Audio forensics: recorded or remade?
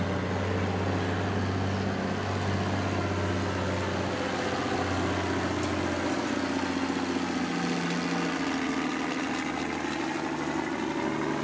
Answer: recorded